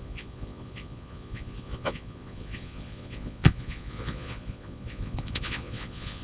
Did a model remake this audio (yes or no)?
yes